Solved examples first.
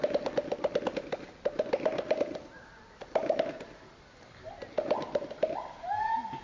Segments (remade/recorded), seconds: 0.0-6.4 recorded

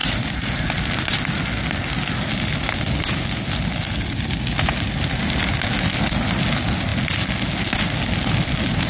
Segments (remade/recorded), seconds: 0.0-8.9 recorded

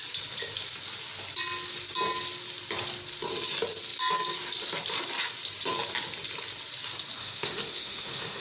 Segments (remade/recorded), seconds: 0.0-7.2 recorded; 7.2-8.4 remade

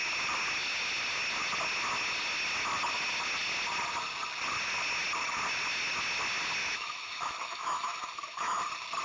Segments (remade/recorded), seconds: 0.0-6.6 recorded; 6.6-8.6 remade; 8.6-9.0 recorded

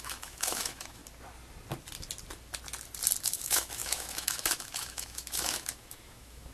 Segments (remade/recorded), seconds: 0.0-1.0 remade; 1.0-3.2 recorded; 3.2-6.5 remade

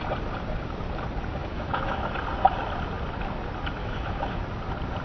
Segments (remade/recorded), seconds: 0.0-1.4 recorded; 1.4-2.1 remade; 2.1-3.8 recorded; 3.8-4.4 remade; 4.4-5.0 recorded

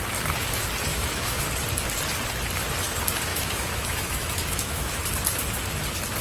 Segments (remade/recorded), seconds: 0.0-0.9 recorded; 0.9-1.4 remade; 1.4-3.3 recorded; 3.3-5.0 remade; 5.0-6.2 recorded

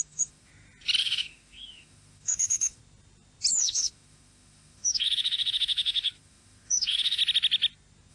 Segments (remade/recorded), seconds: 0.0-0.5 remade; 0.5-1.0 recorded; 1.0-2.8 remade; 2.8-3.5 recorded; 3.5-7.2 remade; 7.2-8.1 recorded